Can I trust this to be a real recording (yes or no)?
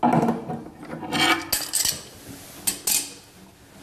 yes